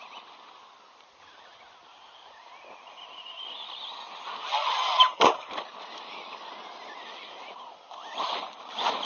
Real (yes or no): yes